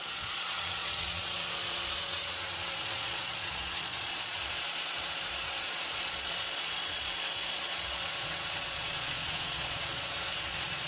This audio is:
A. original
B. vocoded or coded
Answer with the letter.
B